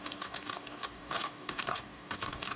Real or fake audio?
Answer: fake